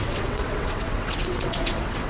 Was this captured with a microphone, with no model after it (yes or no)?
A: no